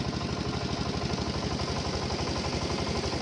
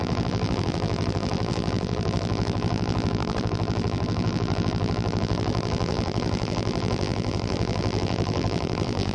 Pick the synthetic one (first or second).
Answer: second